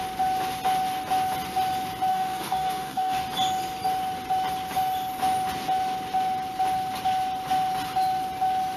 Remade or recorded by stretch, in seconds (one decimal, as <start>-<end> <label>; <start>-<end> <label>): 0.0-2.1 recorded; 2.1-3.2 remade; 3.2-8.8 recorded